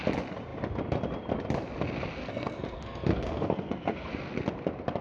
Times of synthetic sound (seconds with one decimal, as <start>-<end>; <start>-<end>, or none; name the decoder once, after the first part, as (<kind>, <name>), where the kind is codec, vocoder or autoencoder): 2.2-4.1 (codec, SNAC)